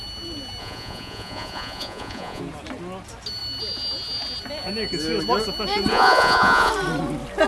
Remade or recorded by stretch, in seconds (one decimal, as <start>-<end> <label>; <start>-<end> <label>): 0.0-0.6 recorded; 0.6-2.4 remade; 2.4-5.9 recorded; 5.9-6.7 remade; 6.7-7.5 recorded